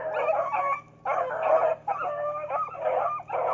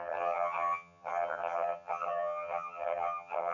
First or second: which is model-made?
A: second